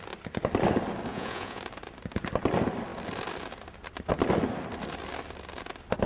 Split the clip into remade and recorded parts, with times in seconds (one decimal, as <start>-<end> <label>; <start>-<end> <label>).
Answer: 0.0-1.1 recorded; 1.1-1.6 remade; 1.6-6.1 recorded